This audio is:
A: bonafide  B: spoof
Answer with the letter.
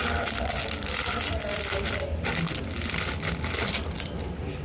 A